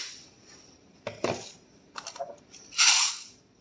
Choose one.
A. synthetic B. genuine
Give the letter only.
A